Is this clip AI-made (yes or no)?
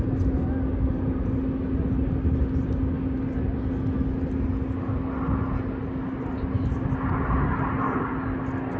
no